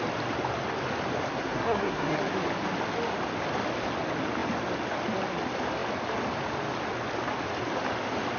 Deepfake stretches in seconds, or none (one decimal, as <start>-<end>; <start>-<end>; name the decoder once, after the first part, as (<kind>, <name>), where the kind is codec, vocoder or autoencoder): 1.3-2.2 (codec, SNAC)